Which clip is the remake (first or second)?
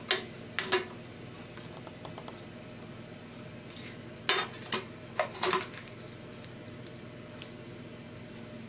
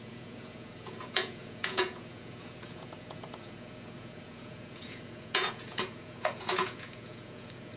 second